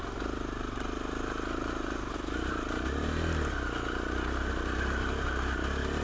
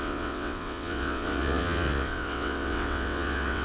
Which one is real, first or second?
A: first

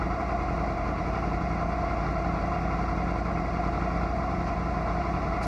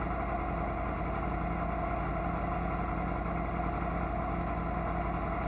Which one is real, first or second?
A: second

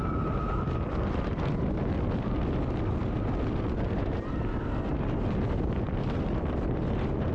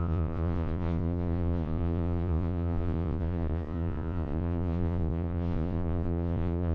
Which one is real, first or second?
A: first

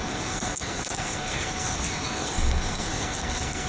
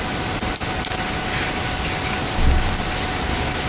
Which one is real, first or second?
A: second